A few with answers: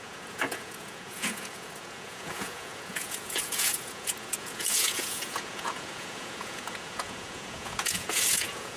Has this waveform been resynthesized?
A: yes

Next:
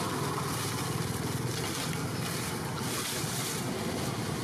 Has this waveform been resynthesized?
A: no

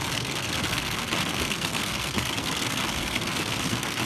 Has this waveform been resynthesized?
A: yes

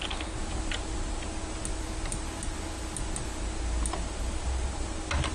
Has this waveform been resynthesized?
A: no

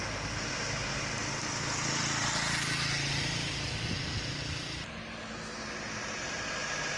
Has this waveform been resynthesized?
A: no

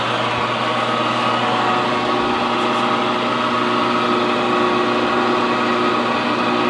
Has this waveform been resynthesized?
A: no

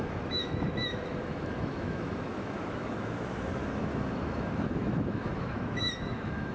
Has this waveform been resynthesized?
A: yes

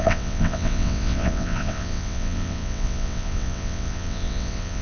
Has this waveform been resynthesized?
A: yes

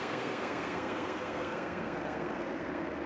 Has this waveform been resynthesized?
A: yes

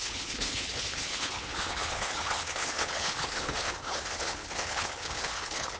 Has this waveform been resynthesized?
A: yes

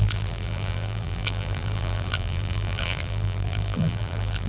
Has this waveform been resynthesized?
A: yes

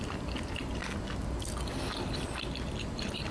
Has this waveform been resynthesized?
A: no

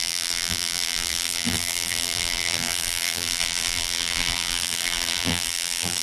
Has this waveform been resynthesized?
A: yes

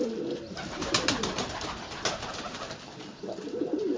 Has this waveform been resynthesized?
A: no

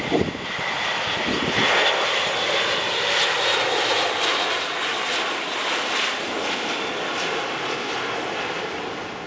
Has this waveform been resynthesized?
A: no